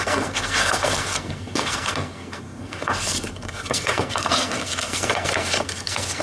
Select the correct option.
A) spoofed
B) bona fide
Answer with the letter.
A